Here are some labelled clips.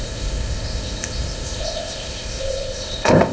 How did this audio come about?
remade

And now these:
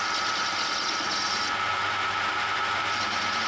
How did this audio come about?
recorded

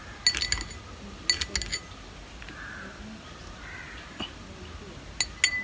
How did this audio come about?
recorded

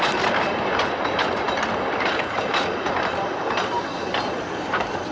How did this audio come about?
recorded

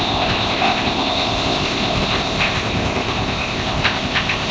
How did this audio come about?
remade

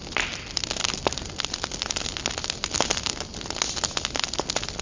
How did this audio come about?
recorded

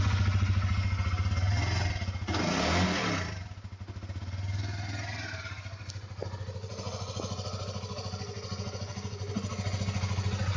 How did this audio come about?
recorded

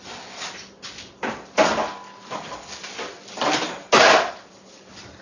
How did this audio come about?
recorded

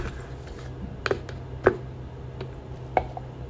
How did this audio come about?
recorded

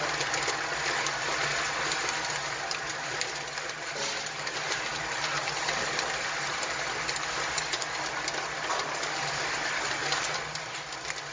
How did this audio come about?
recorded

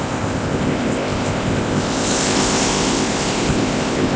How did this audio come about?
remade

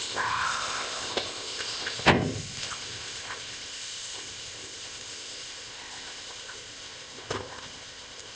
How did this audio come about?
remade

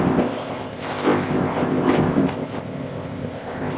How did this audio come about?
remade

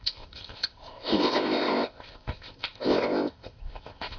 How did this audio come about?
remade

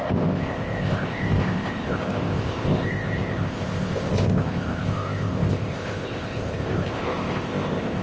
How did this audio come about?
remade